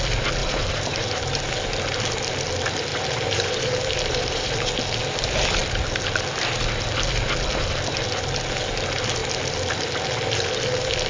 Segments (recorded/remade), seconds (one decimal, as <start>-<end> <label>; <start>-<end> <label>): 0.0-0.4 recorded; 0.4-1.5 remade; 1.5-2.9 recorded; 2.9-4.8 remade; 4.8-11.1 recorded